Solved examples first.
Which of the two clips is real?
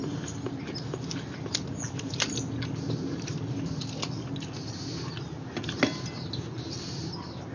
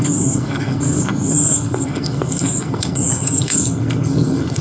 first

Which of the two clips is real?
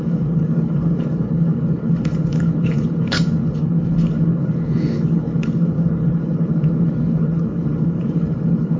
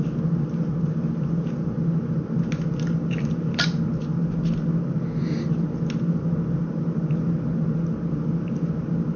second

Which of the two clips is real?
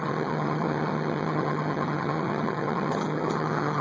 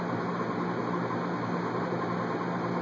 second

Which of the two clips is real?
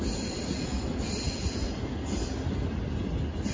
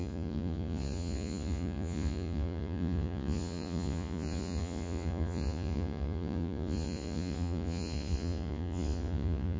first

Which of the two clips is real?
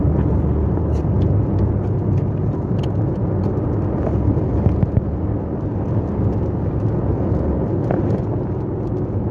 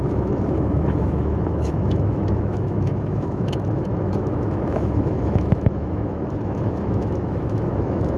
first